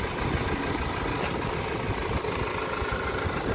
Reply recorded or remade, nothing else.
recorded